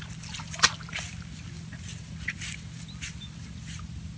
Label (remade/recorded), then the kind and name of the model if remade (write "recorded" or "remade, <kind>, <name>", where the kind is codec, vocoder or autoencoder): recorded